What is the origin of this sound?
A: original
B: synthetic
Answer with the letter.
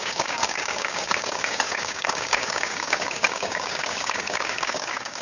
B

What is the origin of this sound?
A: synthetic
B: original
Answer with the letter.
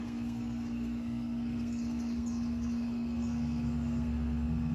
A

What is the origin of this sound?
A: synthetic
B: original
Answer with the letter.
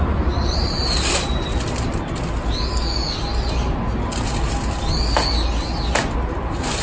B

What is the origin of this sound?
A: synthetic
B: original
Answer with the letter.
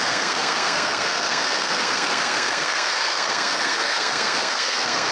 A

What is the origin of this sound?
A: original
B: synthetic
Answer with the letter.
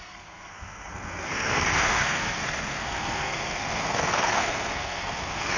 B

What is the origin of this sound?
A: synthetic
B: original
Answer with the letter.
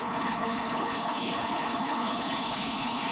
A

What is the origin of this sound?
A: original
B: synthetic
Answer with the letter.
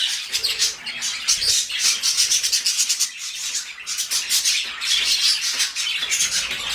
A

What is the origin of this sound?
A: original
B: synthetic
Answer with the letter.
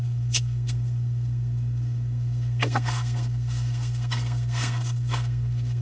B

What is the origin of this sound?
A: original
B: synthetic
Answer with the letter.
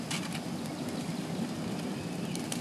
A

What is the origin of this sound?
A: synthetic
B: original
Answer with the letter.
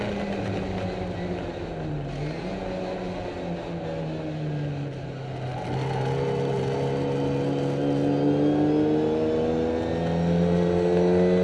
B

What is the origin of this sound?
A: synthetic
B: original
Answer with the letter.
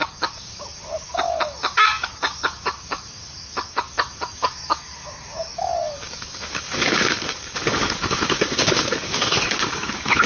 A